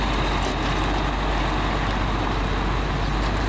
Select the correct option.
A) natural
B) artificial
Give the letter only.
A